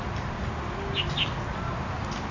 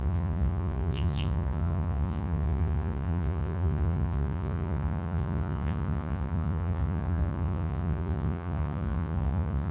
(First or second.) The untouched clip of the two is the first